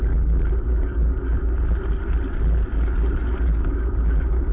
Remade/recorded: recorded